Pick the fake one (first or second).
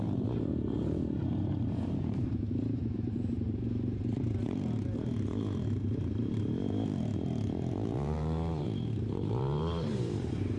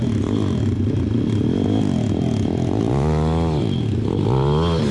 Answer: first